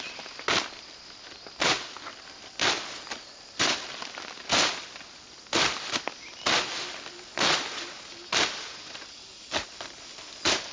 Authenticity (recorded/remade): recorded